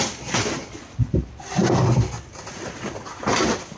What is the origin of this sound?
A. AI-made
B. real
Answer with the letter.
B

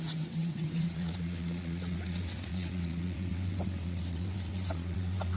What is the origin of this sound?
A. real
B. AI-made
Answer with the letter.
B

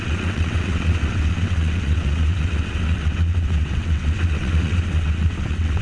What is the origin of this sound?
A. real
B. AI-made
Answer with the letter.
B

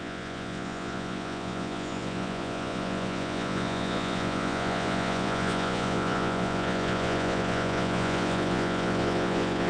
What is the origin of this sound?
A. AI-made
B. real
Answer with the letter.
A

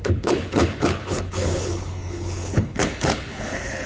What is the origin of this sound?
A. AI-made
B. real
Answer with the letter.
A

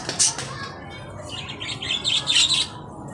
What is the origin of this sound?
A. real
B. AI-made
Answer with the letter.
A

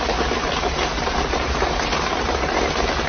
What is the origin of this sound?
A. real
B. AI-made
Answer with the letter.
A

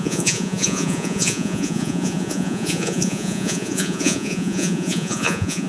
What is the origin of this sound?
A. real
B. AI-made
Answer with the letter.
B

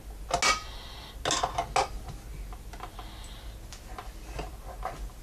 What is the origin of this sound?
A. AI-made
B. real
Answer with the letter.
B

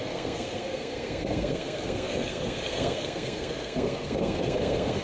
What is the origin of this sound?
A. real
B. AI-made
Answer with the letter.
B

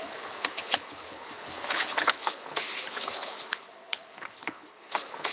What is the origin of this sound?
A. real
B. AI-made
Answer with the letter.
B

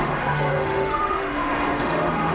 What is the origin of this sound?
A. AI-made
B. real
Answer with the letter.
A